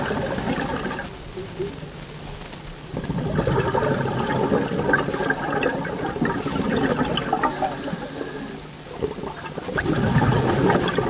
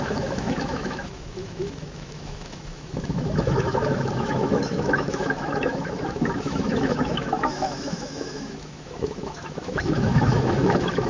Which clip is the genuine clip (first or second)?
first